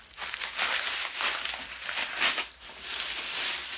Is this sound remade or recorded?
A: recorded